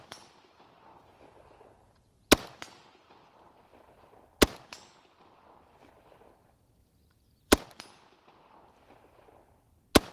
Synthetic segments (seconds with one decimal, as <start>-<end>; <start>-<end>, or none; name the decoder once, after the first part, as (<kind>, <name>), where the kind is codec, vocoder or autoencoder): 6.8-7.6 (vocoder, BigVGAN v2)